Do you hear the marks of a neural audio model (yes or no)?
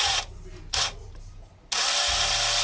no